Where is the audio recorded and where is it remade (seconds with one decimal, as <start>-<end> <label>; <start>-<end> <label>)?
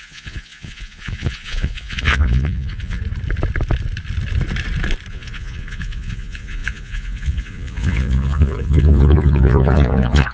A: 0.0-3.0 remade; 3.0-5.1 recorded; 5.1-10.3 remade